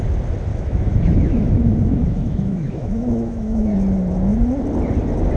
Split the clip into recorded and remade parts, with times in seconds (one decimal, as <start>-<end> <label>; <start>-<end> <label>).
0.0-0.5 recorded; 0.5-3.7 remade; 3.7-5.4 recorded